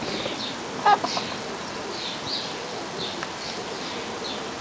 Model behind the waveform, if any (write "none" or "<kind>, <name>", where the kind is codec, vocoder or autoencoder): none